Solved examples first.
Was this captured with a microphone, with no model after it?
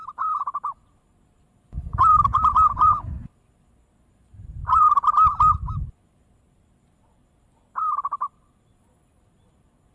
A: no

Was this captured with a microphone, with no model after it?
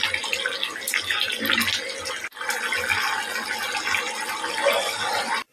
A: yes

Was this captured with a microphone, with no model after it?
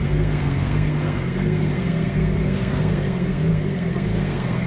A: no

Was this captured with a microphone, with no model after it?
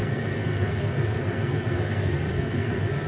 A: no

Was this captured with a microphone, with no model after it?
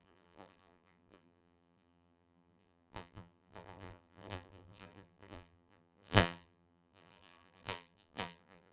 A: no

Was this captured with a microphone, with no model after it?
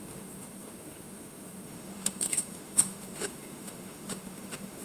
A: no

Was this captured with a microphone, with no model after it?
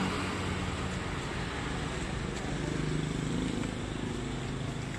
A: yes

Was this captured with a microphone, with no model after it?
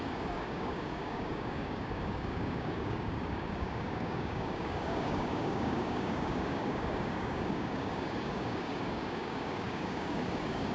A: no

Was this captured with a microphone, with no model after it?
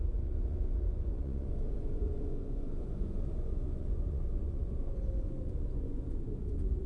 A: no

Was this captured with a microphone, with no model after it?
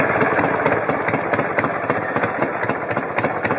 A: yes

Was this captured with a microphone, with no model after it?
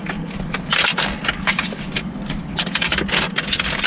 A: yes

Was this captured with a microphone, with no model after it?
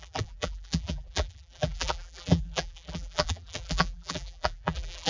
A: no